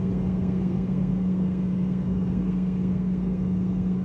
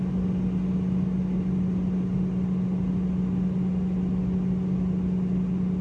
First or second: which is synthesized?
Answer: first